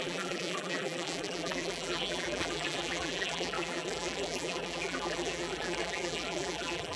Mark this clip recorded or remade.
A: remade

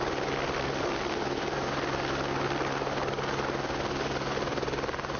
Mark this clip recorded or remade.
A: recorded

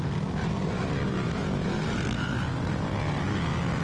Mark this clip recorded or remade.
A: recorded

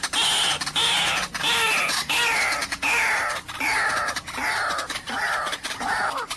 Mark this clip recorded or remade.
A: recorded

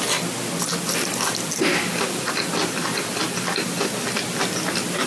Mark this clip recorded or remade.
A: recorded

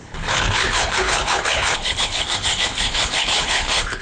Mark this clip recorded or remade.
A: remade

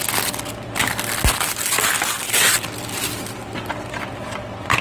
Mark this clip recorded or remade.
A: recorded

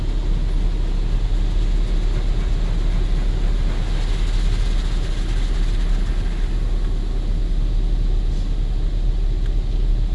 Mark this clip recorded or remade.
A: recorded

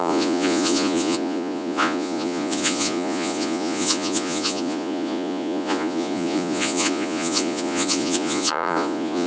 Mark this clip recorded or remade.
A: remade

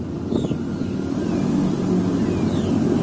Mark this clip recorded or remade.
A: recorded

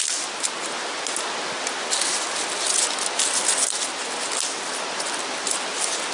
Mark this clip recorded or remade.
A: recorded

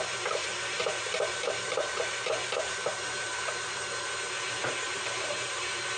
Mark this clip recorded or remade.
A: remade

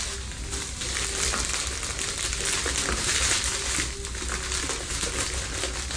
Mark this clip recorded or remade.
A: recorded